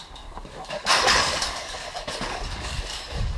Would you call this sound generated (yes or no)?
yes